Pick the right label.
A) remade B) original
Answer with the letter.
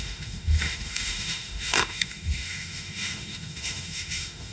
A